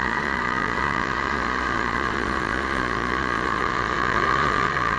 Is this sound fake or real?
fake